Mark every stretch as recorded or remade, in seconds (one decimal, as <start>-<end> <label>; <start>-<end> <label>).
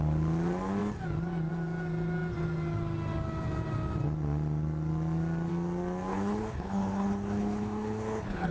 0.0-6.1 recorded; 6.1-8.5 remade